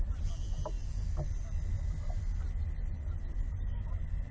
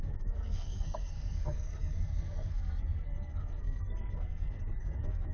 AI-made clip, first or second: second